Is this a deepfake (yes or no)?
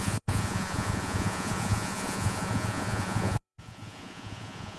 yes